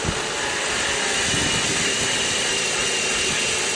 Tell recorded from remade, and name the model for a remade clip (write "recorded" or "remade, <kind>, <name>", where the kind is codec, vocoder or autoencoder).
recorded